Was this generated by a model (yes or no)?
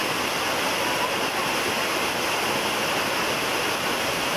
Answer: no